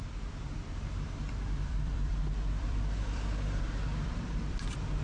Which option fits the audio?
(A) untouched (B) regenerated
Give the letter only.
B